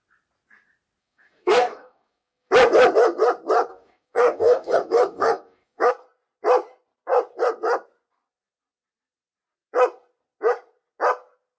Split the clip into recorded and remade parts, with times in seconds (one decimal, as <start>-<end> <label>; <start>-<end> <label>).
0.0-1.0 recorded; 1.0-2.5 remade; 2.5-3.7 recorded; 3.7-5.9 remade; 5.9-11.6 recorded